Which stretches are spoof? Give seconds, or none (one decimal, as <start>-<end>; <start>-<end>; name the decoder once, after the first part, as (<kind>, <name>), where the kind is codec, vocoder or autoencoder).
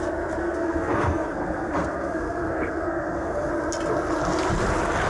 0.4-3.5 (codec, SNAC)